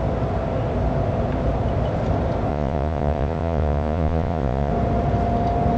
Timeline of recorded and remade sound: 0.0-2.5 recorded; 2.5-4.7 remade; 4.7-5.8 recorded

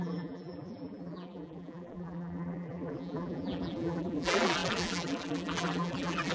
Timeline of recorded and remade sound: 0.0-6.3 remade

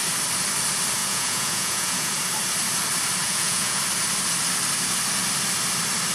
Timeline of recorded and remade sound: 0.0-1.0 recorded; 1.0-2.1 remade; 2.1-3.2 recorded; 3.2-3.8 remade; 3.8-6.1 recorded

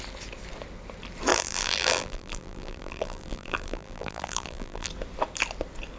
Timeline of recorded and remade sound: 0.0-1.3 recorded; 1.3-4.9 remade; 4.9-6.0 recorded